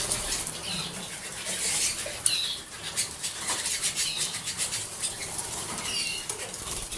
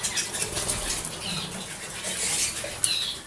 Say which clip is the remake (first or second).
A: first